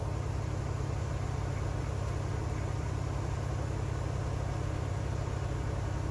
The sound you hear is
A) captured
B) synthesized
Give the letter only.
A